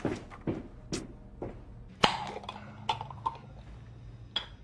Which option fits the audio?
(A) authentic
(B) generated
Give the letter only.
A